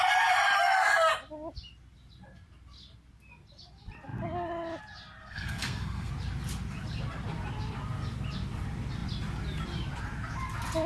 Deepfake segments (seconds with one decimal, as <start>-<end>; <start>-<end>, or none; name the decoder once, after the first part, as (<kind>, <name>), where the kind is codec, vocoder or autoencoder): 5.2-6.1 (codec, SNAC)